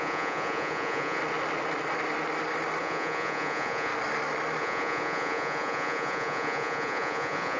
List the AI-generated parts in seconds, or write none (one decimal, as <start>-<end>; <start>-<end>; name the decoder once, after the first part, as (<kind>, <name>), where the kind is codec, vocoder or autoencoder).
0.0-1.2 (vocoder, Vocos); 2.8-3.9; 4.6-7.6